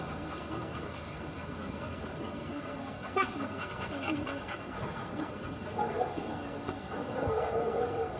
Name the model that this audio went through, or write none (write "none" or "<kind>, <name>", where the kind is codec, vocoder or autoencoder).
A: codec, SNAC